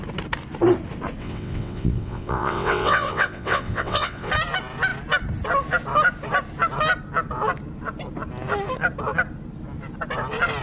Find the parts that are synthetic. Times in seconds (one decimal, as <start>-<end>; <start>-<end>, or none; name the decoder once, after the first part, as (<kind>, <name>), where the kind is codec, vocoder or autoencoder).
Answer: 1.2-4.3 (vocoder, WaveNeXt)